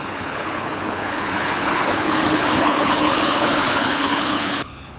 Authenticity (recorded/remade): remade